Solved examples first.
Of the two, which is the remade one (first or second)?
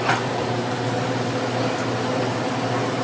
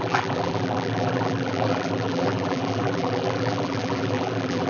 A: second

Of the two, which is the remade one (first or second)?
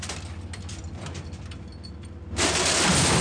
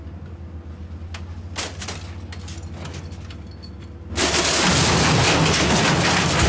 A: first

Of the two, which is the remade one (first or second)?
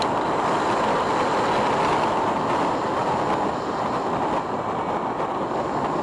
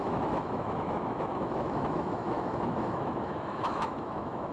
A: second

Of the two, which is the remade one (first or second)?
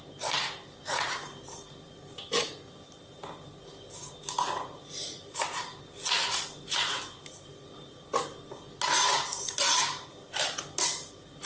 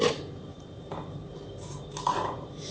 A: second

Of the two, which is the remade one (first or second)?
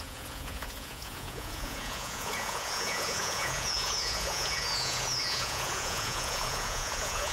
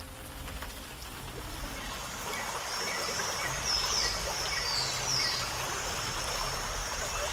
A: first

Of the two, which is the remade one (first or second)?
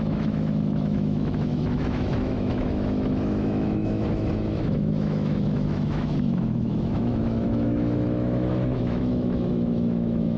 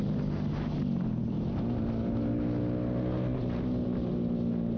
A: first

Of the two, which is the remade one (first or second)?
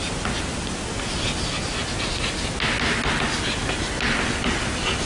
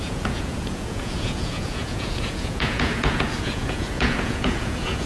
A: second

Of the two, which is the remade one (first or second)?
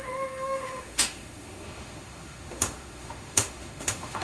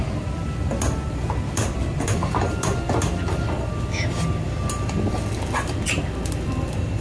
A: first